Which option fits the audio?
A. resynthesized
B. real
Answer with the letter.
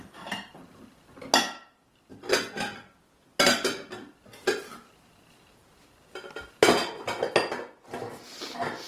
B